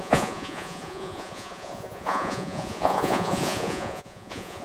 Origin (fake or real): fake